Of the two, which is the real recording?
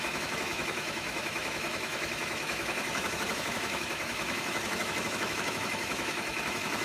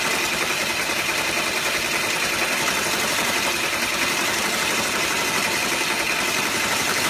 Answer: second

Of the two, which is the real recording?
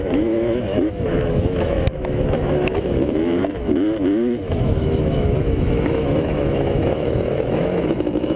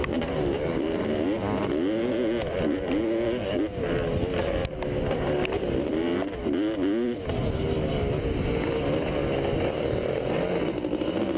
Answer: second